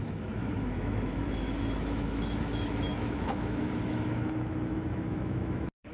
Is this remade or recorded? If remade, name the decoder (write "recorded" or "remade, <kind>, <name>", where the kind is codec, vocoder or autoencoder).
remade, autoencoder, DAC-VAE